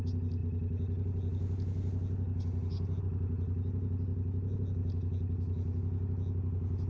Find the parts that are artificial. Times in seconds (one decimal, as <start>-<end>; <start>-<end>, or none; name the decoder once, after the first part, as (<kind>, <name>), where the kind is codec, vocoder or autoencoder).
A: none